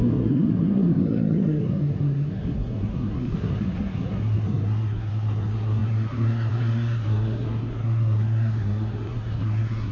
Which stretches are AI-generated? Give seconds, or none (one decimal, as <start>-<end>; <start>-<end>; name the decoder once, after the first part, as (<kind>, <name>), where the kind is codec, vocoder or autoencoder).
0.0-9.9 (codec, SNAC)